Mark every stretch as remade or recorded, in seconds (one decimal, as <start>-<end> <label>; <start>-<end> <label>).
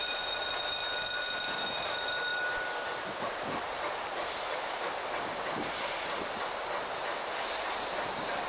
0.0-2.3 recorded; 2.3-3.3 remade; 3.3-8.5 recorded